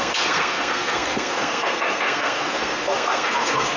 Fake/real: fake